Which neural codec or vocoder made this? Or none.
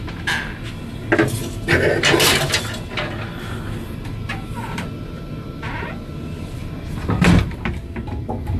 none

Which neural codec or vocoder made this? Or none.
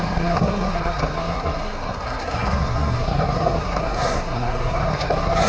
codec, SNAC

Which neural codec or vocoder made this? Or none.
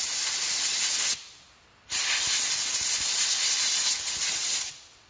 none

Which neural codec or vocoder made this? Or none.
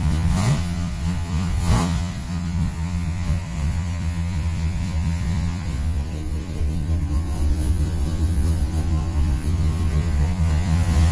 vocoder, Vocos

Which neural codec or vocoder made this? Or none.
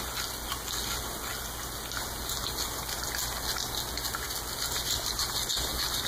none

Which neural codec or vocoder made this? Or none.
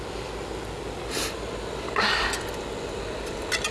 none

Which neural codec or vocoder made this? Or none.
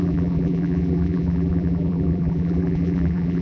vocoder, BigVGAN v2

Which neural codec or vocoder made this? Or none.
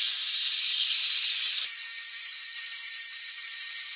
vocoder, BigVGAN v2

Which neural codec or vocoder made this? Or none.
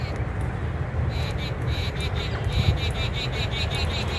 none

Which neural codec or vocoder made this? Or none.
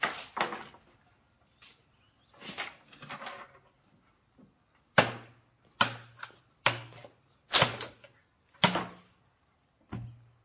none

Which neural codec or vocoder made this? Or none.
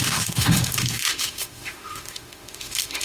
autoencoder, DAC-VAE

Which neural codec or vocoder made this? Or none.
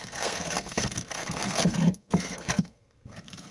codec, SNAC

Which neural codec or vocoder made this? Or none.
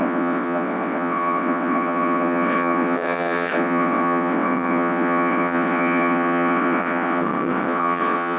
vocoder, WaveNeXt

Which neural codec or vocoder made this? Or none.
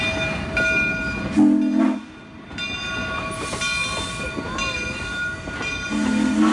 none